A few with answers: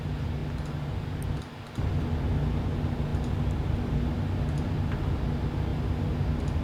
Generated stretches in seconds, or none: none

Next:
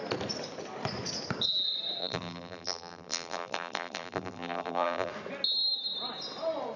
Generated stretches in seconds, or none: 2.0-5.1 (vocoder, BigVGAN v2)

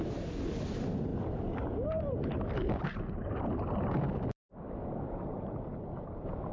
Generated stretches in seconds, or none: none

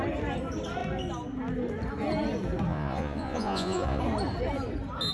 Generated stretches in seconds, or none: 2.7-4.0 (vocoder, Vocos)